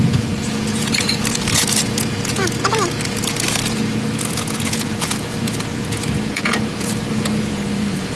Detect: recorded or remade remade